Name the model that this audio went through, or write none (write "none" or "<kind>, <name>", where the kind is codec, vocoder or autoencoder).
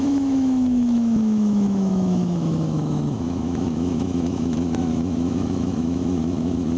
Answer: autoencoder, DAC-VAE